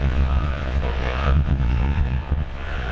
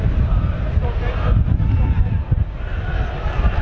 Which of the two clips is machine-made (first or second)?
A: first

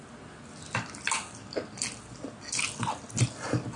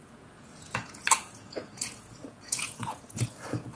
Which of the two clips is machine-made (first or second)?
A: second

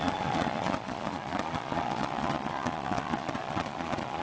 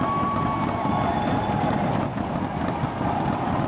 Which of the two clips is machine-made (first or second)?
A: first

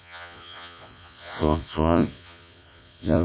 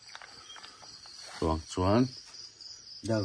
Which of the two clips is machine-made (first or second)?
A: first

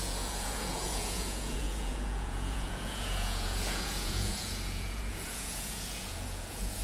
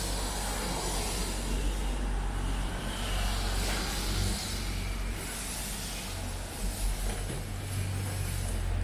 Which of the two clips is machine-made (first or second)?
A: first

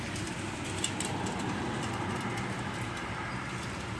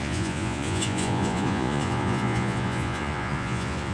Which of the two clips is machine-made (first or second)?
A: second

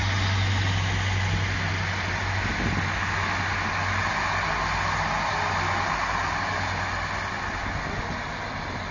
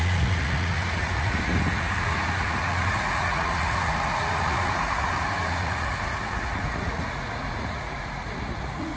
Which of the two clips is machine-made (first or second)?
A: second